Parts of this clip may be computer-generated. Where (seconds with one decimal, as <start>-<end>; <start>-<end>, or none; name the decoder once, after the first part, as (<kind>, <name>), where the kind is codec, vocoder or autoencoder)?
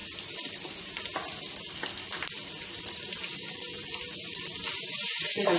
none